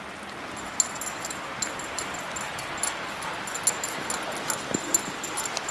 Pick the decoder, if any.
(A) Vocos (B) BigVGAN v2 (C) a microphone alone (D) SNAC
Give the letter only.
C